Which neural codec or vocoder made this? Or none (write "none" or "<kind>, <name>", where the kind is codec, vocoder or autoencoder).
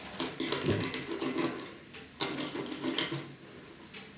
none